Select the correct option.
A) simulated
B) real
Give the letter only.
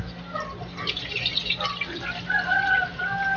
B